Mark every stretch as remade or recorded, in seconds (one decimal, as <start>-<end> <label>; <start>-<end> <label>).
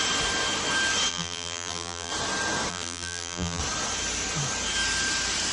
0.0-1.1 recorded; 1.1-2.1 remade; 2.1-2.7 recorded; 2.7-3.6 remade; 3.6-5.5 recorded